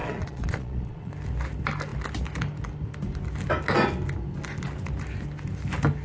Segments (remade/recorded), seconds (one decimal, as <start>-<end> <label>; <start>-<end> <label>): 0.0-1.1 remade; 1.1-6.0 recorded